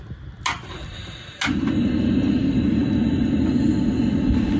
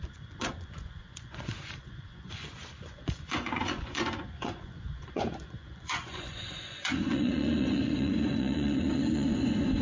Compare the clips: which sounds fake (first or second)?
second